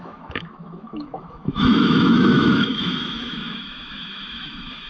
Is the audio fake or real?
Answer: fake